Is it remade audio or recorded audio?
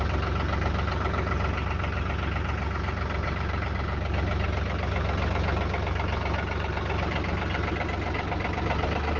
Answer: recorded